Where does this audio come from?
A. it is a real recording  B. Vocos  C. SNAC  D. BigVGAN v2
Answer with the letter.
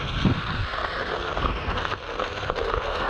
C